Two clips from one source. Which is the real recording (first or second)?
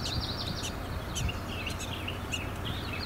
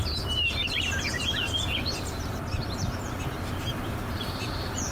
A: first